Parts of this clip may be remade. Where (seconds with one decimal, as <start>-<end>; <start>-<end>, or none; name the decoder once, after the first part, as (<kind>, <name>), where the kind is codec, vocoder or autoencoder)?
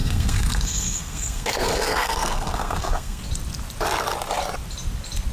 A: 0.0-3.2 (codec, SNAC)